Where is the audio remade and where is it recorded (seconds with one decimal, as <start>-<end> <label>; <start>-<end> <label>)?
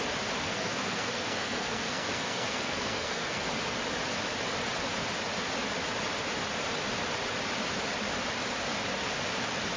0.0-0.4 recorded; 0.4-3.5 remade; 3.5-9.8 recorded